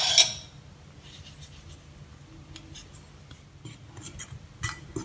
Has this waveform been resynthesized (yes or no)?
no